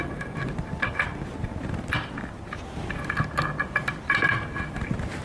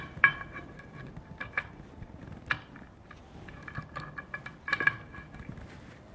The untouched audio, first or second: first